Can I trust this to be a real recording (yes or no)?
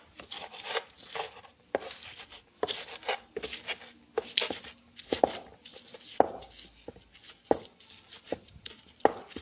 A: yes